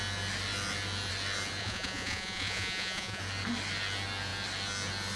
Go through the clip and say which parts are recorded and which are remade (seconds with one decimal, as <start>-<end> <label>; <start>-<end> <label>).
0.0-1.6 recorded; 1.6-3.2 remade; 3.2-5.2 recorded